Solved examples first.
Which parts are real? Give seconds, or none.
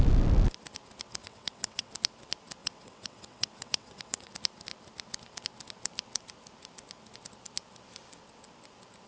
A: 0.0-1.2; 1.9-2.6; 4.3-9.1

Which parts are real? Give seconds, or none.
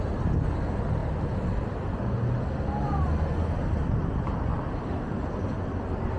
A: 0.0-6.2